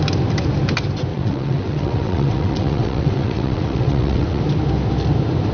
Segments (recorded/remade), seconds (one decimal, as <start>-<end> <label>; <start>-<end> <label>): 0.0-1.1 recorded; 1.1-4.4 remade; 4.4-5.5 recorded